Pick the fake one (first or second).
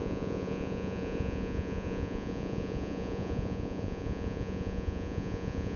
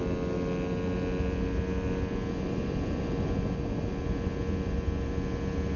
first